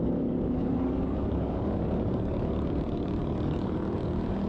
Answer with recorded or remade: remade